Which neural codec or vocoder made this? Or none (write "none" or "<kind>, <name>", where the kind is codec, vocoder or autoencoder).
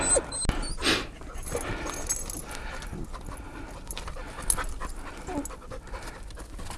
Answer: none